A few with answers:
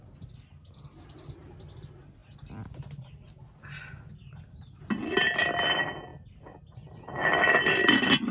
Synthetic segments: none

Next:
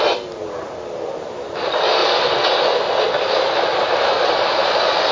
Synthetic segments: none

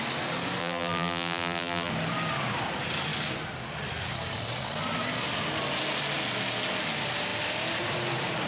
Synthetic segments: 0.6-1.9 (vocoder, BigVGAN v2)